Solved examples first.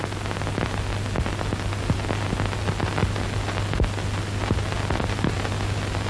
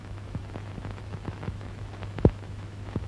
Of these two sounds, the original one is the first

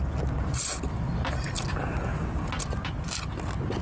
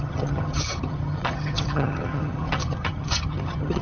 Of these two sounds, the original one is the first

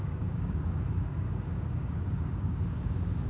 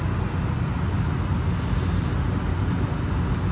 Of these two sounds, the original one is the second